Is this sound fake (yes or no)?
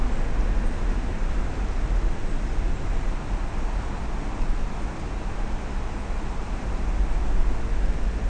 no